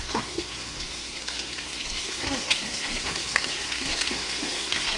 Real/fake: fake